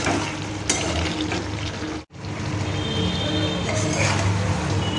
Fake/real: real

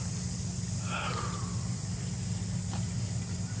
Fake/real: real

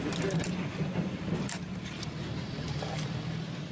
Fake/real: real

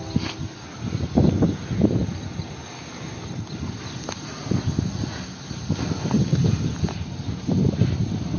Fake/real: real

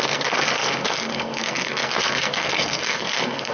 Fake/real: fake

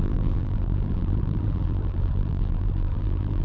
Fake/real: fake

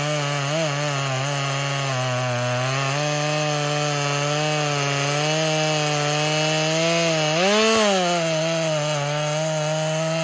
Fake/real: real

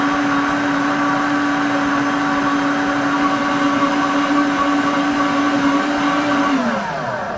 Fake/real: real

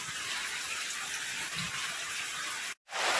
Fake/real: real